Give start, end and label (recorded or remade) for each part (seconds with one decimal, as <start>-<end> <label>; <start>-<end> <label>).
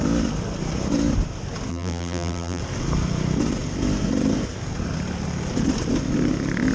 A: 0.0-1.7 recorded; 1.7-2.6 remade; 2.6-6.7 recorded